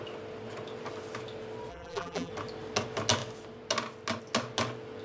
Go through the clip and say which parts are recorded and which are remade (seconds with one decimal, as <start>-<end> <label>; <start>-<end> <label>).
0.0-1.7 recorded; 1.7-2.3 remade; 2.3-5.0 recorded